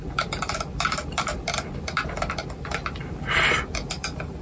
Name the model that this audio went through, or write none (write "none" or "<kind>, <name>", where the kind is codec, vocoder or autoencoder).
none